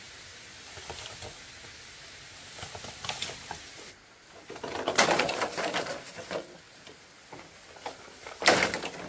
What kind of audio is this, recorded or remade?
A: recorded